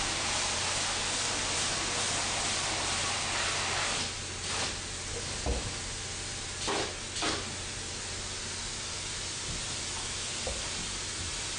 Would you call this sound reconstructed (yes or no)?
no